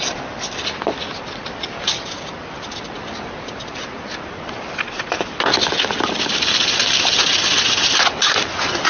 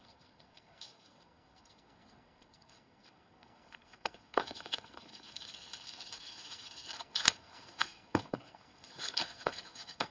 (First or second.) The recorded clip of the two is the first